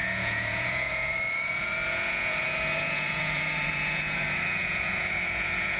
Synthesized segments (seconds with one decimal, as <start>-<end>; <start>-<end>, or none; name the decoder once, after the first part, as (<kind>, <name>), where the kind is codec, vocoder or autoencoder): 0.0-5.8 (vocoder, Vocos)